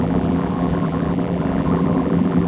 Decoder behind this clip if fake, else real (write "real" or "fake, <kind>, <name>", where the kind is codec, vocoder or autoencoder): fake, vocoder, BigVGAN v2